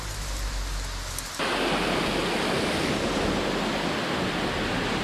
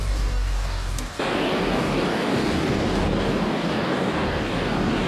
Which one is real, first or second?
first